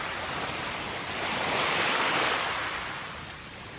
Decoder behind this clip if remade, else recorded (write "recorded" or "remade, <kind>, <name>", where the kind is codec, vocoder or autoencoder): recorded